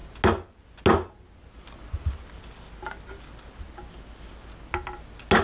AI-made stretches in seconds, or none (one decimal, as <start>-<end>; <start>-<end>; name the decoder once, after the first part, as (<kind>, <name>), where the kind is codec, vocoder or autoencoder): none